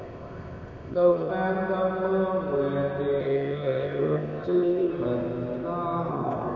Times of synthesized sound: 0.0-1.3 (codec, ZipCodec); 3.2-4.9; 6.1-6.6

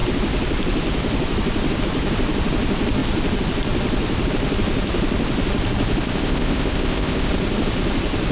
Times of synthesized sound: 6.0-7.3 (codec, ZipCodec)